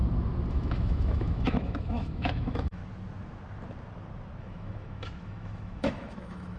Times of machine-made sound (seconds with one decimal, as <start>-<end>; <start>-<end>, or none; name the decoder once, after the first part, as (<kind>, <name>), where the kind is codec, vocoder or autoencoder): 0.5-2.8 (autoencoder, DAC-VAE); 4.4-6.6